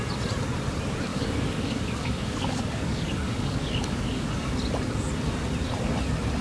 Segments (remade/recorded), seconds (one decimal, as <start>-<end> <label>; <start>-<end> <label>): 0.0-1.1 recorded; 1.1-4.3 remade; 4.3-6.4 recorded